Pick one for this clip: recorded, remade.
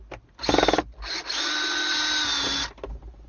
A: recorded